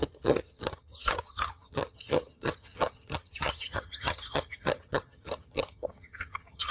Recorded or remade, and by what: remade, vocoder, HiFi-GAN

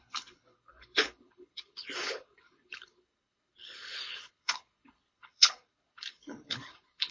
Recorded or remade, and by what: remade, codec, HILCodec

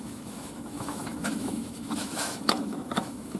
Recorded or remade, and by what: remade, autoencoder, DAC-VAE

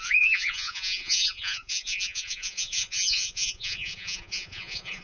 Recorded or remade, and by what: remade, vocoder, Vocos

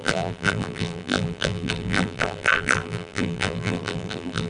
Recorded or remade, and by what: remade, vocoder, BigVGAN v2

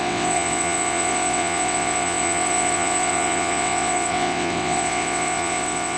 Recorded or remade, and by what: remade, vocoder, WaveNeXt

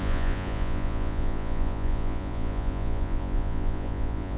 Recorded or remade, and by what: remade, vocoder, Vocos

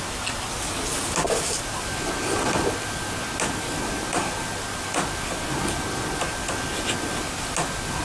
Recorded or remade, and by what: recorded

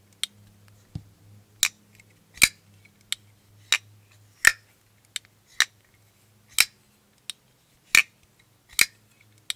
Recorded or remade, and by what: recorded